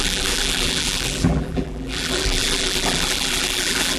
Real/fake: fake